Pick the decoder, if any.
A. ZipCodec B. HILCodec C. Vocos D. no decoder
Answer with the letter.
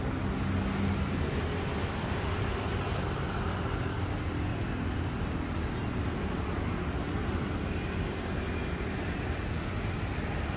D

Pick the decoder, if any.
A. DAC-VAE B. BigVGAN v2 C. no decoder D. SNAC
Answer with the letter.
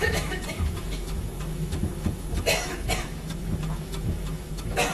A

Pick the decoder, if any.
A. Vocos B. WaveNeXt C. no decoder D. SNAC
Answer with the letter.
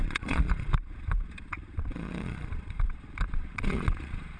A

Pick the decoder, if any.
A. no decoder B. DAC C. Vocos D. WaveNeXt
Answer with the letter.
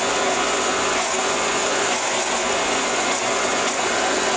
C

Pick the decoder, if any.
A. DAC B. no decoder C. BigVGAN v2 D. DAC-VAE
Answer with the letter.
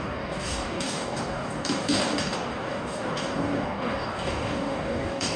A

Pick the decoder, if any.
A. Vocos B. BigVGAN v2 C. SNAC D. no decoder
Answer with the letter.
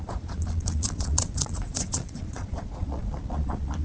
A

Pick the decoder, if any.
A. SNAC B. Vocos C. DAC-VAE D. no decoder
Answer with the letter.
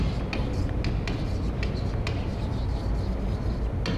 D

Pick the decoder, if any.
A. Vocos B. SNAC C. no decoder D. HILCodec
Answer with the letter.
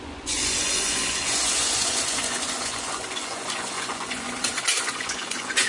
A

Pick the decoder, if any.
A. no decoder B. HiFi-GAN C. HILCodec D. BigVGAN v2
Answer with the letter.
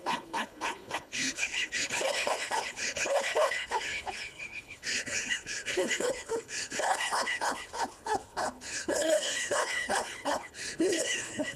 C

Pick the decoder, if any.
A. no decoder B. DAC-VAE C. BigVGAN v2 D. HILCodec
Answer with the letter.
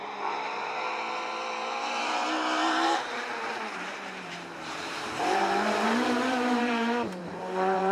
C